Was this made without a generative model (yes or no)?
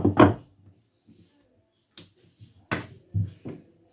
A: yes